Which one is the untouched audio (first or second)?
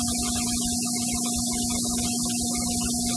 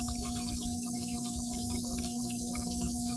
first